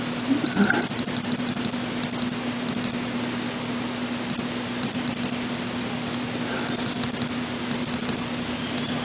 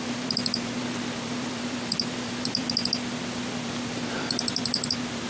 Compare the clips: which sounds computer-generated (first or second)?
second